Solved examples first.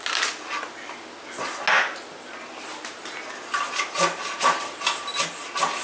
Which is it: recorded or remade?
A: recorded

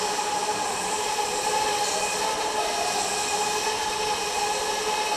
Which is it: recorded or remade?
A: recorded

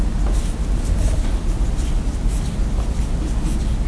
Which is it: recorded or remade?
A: recorded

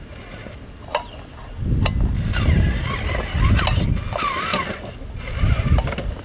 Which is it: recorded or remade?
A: recorded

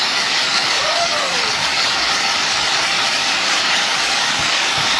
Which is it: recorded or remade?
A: remade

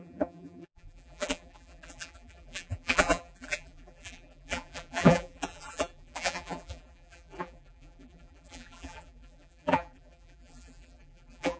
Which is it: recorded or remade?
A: remade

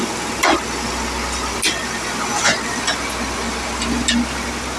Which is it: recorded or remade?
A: recorded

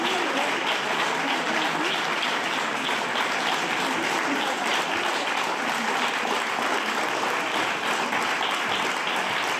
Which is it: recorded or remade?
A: recorded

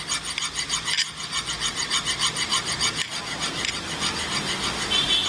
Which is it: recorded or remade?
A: recorded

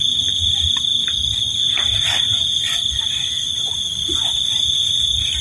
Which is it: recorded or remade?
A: recorded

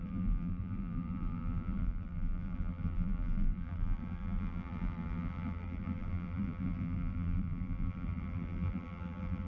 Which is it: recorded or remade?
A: remade